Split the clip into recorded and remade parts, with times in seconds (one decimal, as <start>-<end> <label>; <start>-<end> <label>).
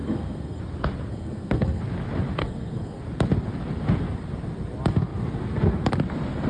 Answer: 0.0-0.6 remade; 0.6-1.1 recorded; 1.1-1.8 remade; 1.8-2.4 recorded; 2.4-3.0 remade; 3.0-6.5 recorded